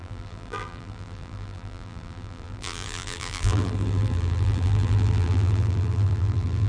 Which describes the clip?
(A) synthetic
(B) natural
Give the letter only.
A